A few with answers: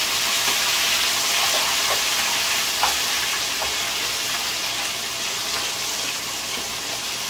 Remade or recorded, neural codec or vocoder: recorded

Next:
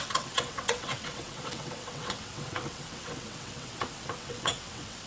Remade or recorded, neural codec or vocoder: remade, vocoder, WaveNeXt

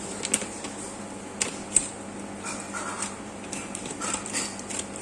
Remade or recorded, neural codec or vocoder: recorded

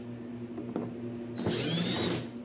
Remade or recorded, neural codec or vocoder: recorded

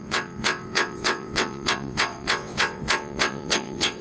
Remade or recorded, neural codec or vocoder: remade, vocoder, WaveNeXt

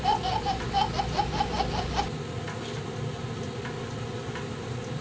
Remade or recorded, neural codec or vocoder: recorded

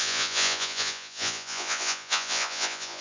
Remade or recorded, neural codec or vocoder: remade, vocoder, Vocos